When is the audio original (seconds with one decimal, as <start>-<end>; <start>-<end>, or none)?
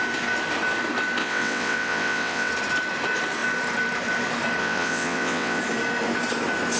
0.0-1.2; 2.5-4.6; 5.6-6.8